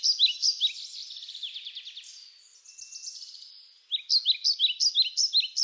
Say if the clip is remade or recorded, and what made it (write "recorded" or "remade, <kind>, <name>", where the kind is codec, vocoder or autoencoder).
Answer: recorded